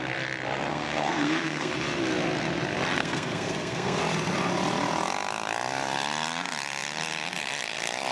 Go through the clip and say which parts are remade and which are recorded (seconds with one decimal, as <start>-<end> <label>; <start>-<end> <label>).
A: 0.0-0.7 recorded; 0.7-1.7 remade; 1.7-3.0 recorded; 3.0-4.0 remade; 4.0-8.1 recorded